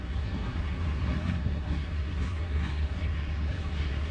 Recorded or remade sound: remade